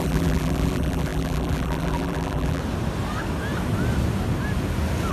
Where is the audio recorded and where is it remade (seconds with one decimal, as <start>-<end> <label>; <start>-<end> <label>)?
0.0-2.6 remade; 2.6-5.1 recorded